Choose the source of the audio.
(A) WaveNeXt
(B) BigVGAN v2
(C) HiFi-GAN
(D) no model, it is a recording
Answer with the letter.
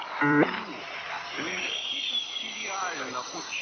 B